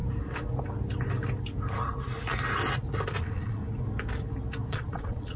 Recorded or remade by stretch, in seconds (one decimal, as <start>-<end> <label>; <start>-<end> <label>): 0.0-3.2 recorded; 3.2-3.6 remade; 3.6-4.7 recorded; 4.7-5.4 remade